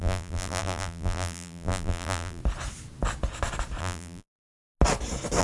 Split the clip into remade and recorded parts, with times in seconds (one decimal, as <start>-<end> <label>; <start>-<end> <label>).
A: 0.0-2.4 remade; 2.4-3.8 recorded; 3.8-4.4 remade; 4.4-5.4 recorded